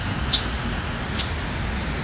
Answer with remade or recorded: recorded